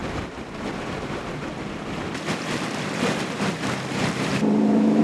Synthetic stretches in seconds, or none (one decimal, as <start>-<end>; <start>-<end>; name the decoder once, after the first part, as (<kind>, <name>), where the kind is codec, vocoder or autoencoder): 0.0-3.0 (vocoder, BigVGAN v2); 4.3-5.0